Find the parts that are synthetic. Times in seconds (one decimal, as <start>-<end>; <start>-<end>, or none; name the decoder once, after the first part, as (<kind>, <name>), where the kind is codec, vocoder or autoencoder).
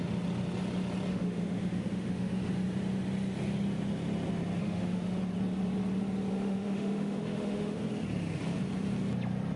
1.1-2.5 (autoencoder, DAC-VAE); 4.6-5.2; 6.3-7.8